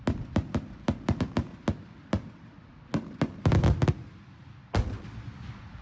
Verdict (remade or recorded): recorded